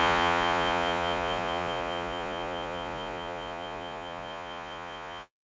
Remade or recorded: remade